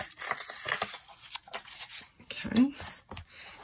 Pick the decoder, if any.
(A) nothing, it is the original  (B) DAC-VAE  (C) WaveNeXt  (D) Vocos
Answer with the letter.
A